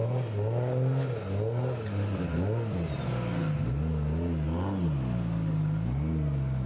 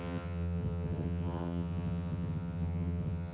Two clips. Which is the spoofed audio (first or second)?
second